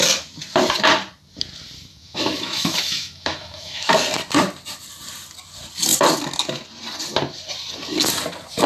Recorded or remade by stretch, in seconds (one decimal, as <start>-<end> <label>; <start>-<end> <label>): 0.0-1.9 recorded; 1.9-3.9 remade; 3.9-8.7 recorded